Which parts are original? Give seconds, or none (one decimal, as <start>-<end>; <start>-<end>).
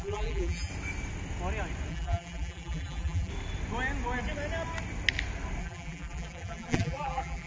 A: 0.7-1.9; 3.3-5.6